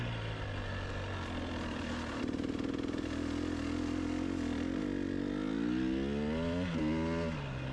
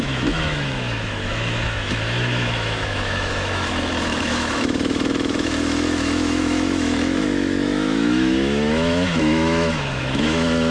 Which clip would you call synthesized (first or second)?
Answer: second